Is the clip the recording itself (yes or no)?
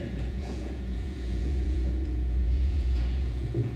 no